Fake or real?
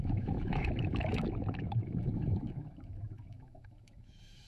fake